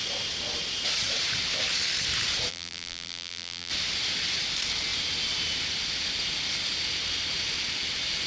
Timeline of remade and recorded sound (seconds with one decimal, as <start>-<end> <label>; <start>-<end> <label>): 0.0-2.5 recorded; 2.5-3.7 remade; 3.7-8.3 recorded